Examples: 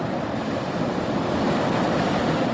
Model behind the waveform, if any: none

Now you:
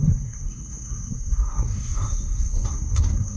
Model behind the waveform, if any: codec, SNAC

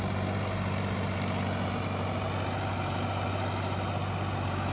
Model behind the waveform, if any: none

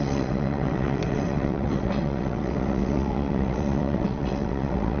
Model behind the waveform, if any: vocoder, WaveNeXt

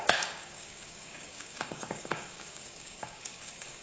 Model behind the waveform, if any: codec, DAC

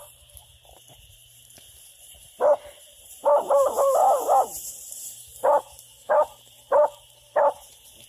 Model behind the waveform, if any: vocoder, BigVGAN v2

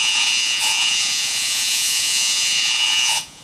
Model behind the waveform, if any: vocoder, Vocos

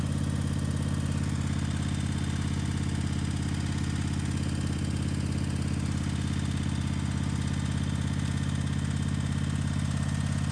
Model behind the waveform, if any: none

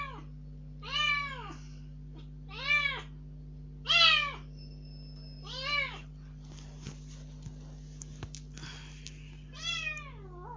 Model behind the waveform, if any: none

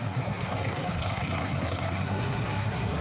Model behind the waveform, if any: codec, SNAC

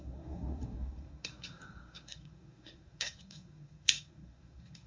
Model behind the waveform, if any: codec, SNAC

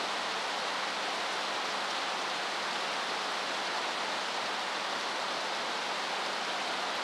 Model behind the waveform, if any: none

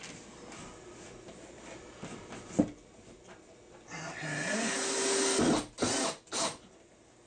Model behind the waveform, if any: none